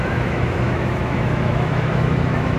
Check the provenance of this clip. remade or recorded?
remade